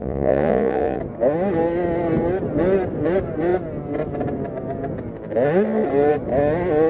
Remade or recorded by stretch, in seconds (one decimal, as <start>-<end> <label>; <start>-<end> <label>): 0.0-1.0 remade; 1.0-6.9 recorded